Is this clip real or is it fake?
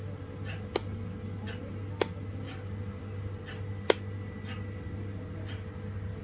real